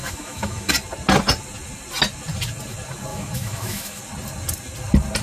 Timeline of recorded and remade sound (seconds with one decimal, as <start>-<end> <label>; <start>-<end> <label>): 0.0-0.7 remade; 0.7-3.1 recorded; 3.1-4.0 remade; 4.0-5.2 recorded